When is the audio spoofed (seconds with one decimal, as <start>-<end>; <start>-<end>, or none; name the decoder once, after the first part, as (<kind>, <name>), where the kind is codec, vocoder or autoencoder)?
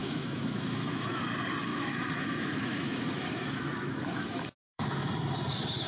0.0-1.2 (autoencoder, DAC-VAE); 1.7-5.1